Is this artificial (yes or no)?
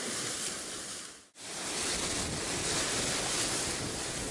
no